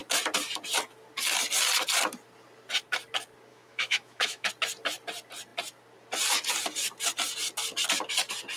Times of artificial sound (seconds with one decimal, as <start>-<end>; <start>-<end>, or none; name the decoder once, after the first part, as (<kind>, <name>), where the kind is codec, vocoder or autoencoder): 3.5-4.5 (autoencoder, DAC-VAE)